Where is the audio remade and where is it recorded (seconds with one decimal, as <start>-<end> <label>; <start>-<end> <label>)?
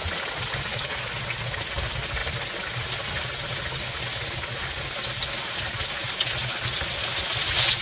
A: 0.0-7.8 recorded